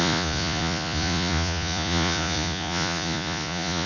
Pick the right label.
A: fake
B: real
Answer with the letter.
A